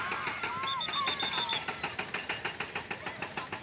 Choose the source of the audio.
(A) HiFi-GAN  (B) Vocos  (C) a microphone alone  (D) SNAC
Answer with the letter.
C